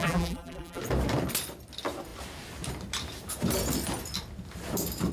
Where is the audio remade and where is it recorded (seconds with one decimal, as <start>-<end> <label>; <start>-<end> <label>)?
0.0-0.8 remade; 0.8-5.1 recorded